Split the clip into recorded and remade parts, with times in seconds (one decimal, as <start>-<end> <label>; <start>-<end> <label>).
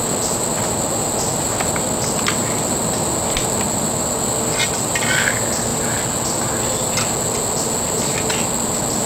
0.0-9.1 recorded